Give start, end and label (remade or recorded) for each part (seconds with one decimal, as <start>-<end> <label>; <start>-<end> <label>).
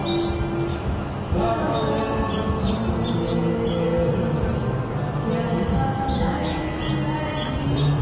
0.0-0.7 recorded; 0.7-2.0 remade; 2.0-6.1 recorded; 6.1-6.8 remade; 6.8-8.0 recorded